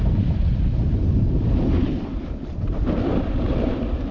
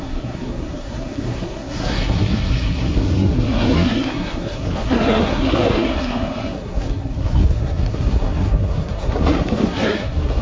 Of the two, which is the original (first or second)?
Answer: first